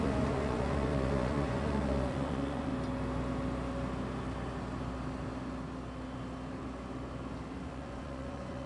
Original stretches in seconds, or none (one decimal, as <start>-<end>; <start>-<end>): 2.7-7.7